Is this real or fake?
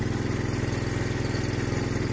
real